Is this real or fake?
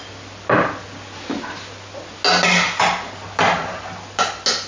real